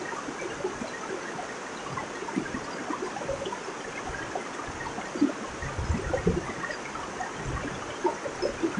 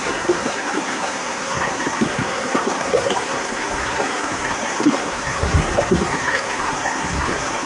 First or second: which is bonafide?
first